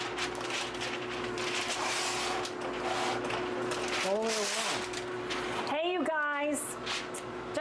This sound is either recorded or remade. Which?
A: recorded